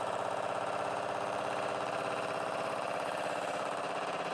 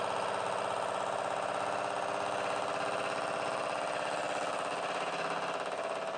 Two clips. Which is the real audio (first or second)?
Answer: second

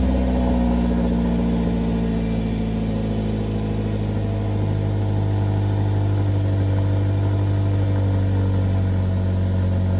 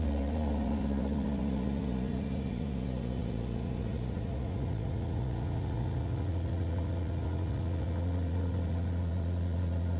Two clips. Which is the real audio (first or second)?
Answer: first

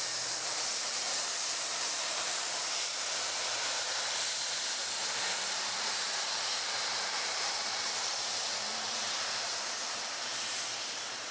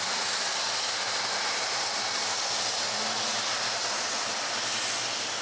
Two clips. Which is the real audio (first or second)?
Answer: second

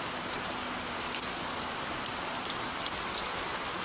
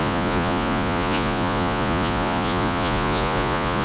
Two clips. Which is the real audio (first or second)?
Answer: first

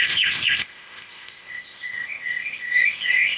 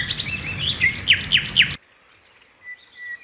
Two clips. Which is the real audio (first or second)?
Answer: second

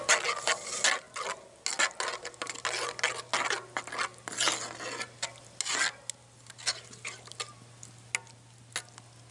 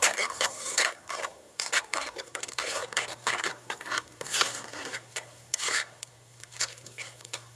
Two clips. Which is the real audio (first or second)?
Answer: first